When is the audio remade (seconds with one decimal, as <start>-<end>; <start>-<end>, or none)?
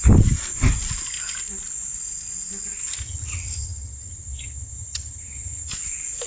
3.0-5.7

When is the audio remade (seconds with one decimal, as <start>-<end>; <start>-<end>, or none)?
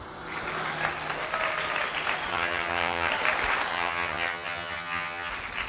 2.3-3.1; 3.7-5.3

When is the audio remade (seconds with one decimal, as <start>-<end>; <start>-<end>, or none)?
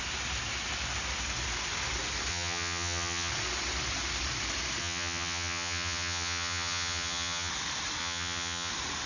2.3-3.3; 4.8-7.5; 8.0-8.7